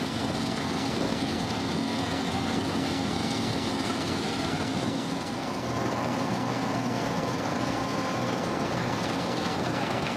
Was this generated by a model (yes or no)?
yes